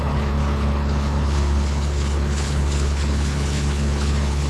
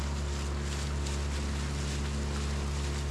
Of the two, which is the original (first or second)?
second